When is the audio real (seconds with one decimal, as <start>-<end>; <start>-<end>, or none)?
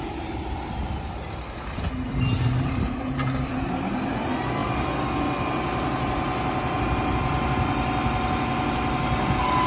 0.0-9.7